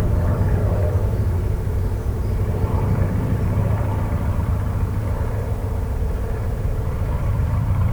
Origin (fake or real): fake